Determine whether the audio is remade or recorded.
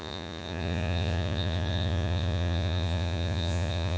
remade